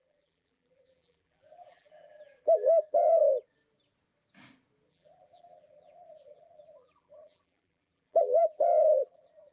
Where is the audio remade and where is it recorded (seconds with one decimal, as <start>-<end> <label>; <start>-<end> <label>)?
0.0-3.2 remade; 3.2-4.9 recorded; 4.9-9.5 remade